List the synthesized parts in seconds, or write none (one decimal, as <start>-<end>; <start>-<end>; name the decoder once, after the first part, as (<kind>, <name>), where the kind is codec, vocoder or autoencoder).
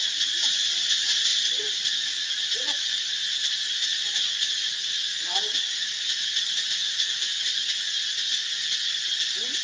1.3-3.2 (vocoder, BigVGAN v2)